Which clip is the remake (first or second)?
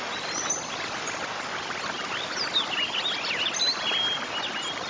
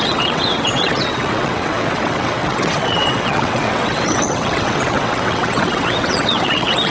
second